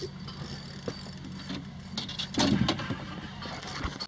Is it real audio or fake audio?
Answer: real